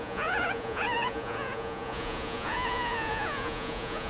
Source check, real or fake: fake